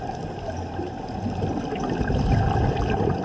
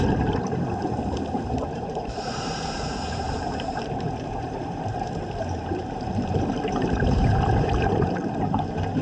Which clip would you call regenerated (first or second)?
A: second